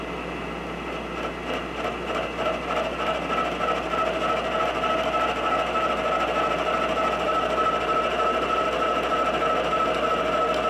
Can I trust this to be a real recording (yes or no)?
yes